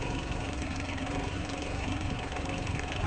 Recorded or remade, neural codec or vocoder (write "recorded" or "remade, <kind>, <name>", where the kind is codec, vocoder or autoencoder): remade, codec, SNAC